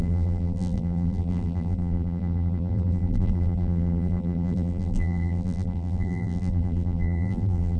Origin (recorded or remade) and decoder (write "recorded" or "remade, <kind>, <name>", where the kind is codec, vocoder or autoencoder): remade, vocoder, BigVGAN v2